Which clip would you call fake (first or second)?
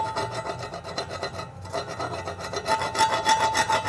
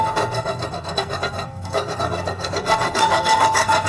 second